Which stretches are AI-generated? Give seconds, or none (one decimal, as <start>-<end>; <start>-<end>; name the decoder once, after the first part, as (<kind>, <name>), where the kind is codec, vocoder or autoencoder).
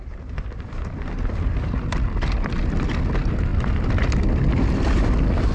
none